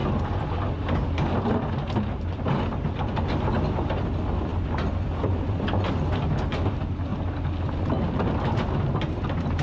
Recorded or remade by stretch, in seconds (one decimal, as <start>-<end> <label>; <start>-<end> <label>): 0.0-9.6 recorded